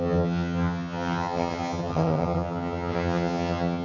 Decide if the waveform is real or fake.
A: fake